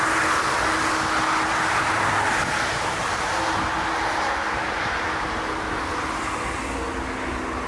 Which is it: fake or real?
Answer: real